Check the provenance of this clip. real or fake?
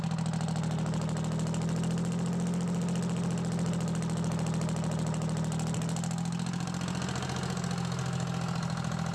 real